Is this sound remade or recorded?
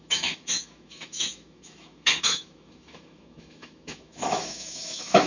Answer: remade